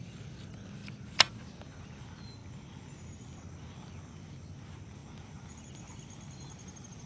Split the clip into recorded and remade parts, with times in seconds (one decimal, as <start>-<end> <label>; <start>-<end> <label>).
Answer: 0.0-7.1 recorded